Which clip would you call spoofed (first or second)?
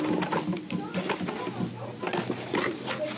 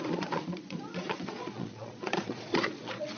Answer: second